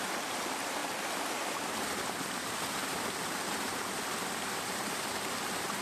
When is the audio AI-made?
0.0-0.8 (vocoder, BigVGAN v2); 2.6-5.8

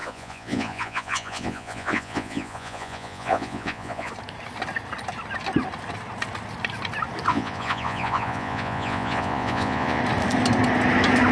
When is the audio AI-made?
0.0-4.1 (vocoder, Vocos); 7.3-10.0

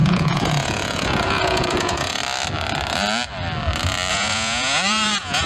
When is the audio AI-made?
0.0-2.2 (vocoder, Vocos); 4.1-5.5